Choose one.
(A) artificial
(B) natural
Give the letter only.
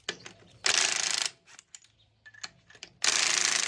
B